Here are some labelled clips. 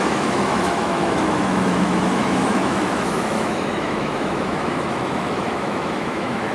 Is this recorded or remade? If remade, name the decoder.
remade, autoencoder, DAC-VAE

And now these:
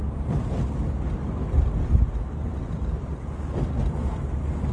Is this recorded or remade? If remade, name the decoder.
recorded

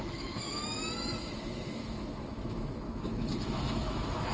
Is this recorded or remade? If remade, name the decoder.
remade, autoencoder, DAC-VAE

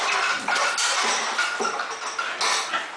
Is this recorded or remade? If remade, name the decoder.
recorded